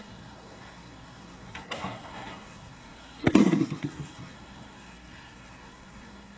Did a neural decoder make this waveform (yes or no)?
yes